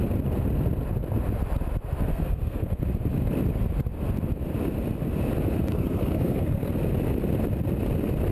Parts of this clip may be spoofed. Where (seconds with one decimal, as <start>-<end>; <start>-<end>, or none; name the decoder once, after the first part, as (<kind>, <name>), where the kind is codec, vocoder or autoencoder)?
2.1-2.8 (codec, SNAC); 5.7-6.7